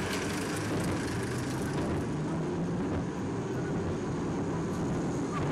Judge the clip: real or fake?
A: real